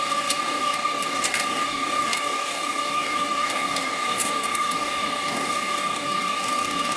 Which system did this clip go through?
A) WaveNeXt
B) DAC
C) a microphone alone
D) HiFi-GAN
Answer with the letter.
B